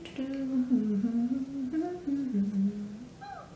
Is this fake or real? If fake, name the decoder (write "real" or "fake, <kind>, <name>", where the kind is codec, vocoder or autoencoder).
real